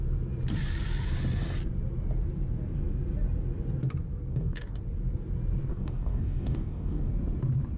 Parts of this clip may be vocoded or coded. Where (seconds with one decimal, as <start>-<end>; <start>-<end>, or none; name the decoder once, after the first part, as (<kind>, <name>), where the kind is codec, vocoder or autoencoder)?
4.3-4.8 (codec, DAC); 5.7-7.1